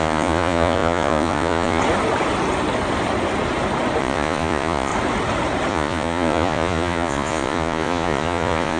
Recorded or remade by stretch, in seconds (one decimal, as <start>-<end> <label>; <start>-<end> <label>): 0.0-1.8 remade; 1.8-4.0 recorded; 4.0-4.9 remade; 4.9-5.7 recorded; 5.7-8.8 remade